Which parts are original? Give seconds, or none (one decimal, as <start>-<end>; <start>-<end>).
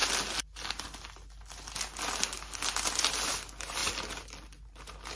0.0-5.2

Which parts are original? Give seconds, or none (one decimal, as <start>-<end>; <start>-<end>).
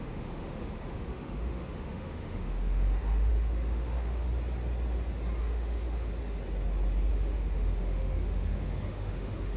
4.3-5.4; 6.1-7.1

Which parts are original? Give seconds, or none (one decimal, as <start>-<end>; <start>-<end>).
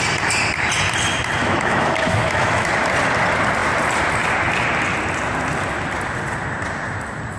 0.0-1.4; 2.7-7.4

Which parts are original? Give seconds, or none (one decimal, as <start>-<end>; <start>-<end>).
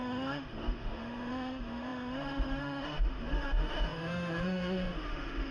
none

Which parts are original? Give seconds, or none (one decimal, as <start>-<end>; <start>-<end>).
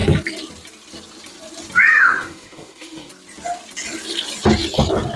0.0-1.9; 3.1-5.2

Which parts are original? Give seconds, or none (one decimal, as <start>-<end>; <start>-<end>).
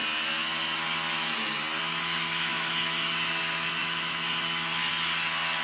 0.0-2.5; 3.4-3.8; 4.9-5.6